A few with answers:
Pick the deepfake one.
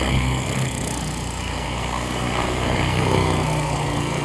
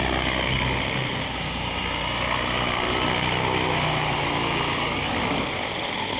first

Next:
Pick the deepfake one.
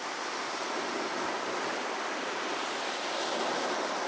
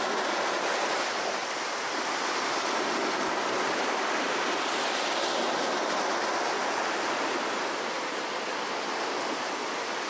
first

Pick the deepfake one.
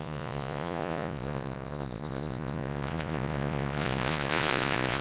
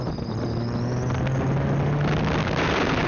first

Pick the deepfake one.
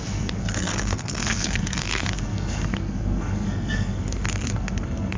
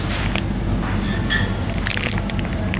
first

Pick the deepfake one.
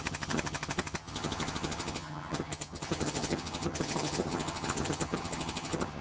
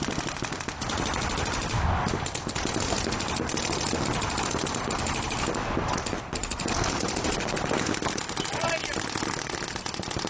first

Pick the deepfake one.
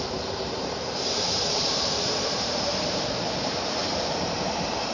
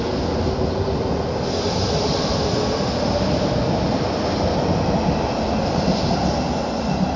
first